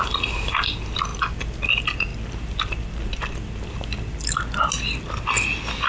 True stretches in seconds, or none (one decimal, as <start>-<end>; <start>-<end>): 0.0-5.9